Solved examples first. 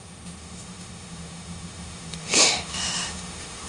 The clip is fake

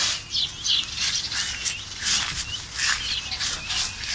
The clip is real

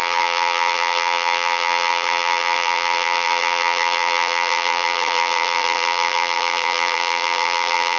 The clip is fake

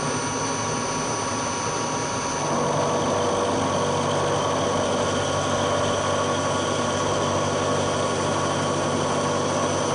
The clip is real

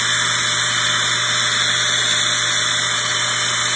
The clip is real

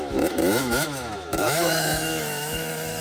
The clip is fake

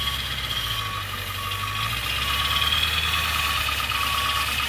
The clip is real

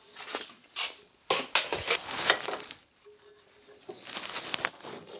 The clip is real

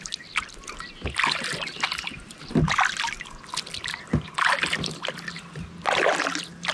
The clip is real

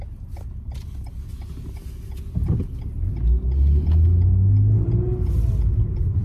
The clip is real